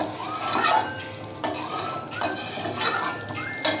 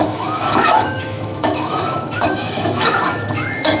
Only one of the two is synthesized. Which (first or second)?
second